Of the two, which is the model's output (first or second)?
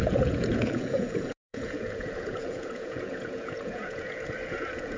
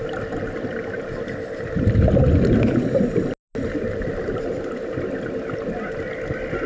first